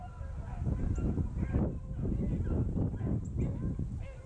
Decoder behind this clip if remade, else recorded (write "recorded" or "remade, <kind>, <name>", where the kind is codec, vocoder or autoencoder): recorded